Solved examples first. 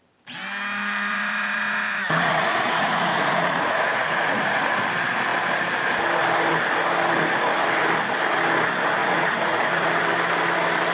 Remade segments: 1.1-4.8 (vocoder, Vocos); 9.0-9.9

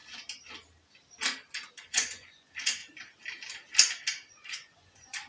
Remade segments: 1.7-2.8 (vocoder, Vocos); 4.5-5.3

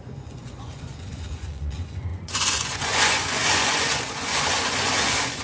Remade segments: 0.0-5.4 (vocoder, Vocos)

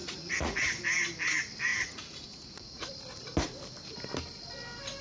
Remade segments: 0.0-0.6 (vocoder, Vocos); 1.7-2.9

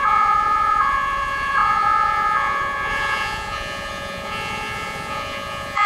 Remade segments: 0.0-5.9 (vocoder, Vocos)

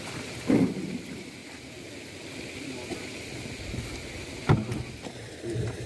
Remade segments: none